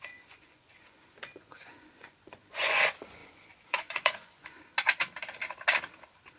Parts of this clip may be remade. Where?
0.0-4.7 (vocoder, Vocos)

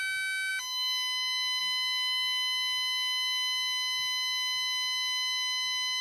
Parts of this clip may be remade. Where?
none

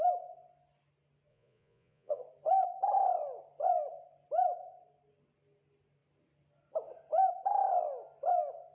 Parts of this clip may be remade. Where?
1.3-2.2 (vocoder, Vocos)

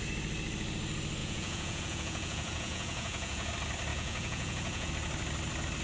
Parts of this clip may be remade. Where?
1.2-3.5 (vocoder, Vocos); 3.9-4.9

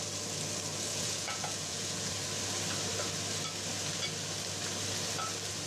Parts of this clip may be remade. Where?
0.9-2.1 (vocoder, Vocos)

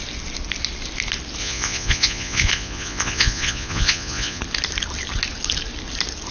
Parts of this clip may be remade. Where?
1.4-4.4 (vocoder, Vocos)

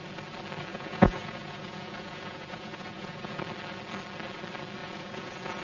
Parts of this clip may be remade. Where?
0.7-3.4 (vocoder, Vocos); 4.8-5.6

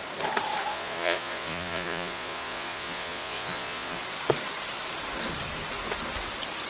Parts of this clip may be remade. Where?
0.7-4.0 (vocoder, Vocos)